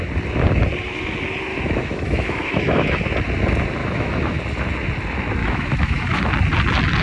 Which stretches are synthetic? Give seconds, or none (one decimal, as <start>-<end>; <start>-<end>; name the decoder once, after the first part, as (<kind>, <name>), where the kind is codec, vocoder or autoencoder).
1.5-3.0 (autoencoder, DAC-VAE); 3.8-4.4; 5.4-6.2